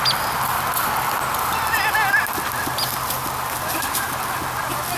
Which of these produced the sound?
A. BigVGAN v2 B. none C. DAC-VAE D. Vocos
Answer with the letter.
B